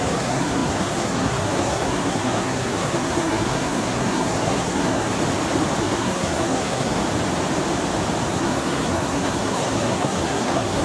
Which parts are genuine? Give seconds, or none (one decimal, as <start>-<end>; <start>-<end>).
5.2-5.8; 7.0-8.3